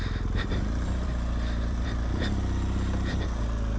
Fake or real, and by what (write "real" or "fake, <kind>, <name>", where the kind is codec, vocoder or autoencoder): fake, vocoder, BigVGAN v2